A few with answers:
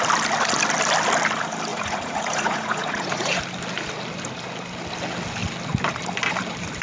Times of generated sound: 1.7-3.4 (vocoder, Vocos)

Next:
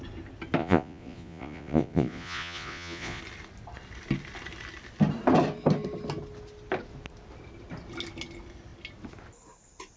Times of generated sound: 0.6-3.2 (vocoder, Vocos)